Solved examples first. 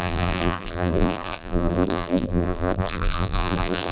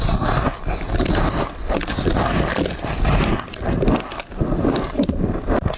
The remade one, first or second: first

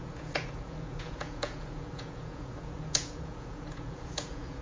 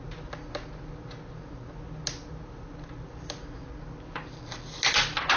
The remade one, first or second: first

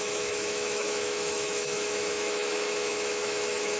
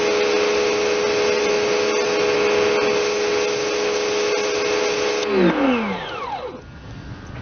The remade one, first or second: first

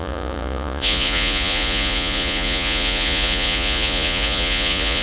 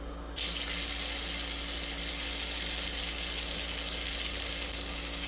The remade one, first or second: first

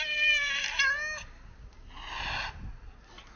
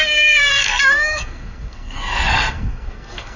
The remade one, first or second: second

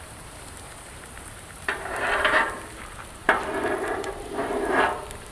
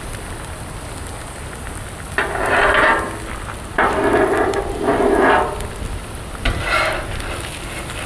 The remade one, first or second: first